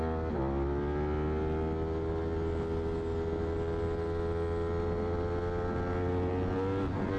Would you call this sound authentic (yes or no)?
yes